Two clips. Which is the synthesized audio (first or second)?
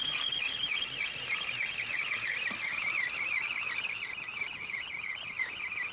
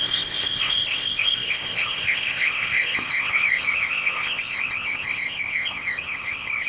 second